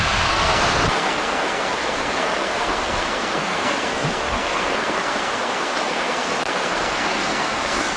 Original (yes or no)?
no